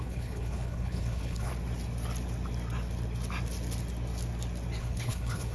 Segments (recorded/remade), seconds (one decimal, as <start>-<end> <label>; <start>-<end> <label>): 0.0-1.5 remade; 1.5-4.8 recorded; 4.8-5.5 remade